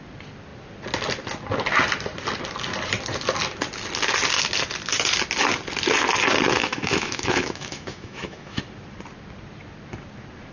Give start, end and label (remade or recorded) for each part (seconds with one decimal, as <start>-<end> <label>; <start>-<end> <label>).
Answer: 0.0-6.6 recorded; 6.6-8.6 remade; 8.6-10.5 recorded